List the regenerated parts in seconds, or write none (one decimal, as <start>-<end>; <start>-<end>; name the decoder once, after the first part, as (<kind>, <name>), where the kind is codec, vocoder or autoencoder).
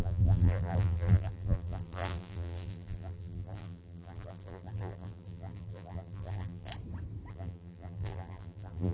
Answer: 0.0-6.7 (vocoder, BigVGAN v2); 7.3-8.9